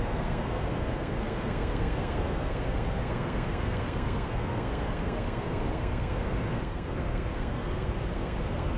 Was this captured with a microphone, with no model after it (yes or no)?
no